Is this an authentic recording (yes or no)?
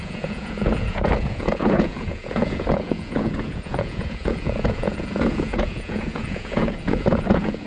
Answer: no